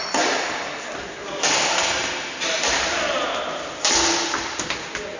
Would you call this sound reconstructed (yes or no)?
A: no